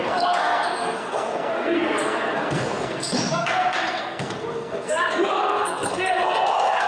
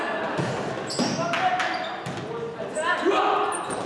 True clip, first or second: second